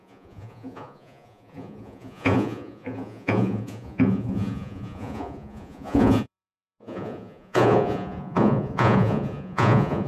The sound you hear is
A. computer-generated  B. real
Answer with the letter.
A